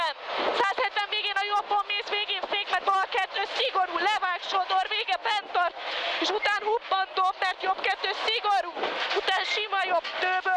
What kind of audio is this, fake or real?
real